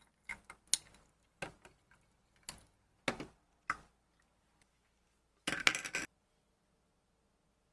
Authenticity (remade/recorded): recorded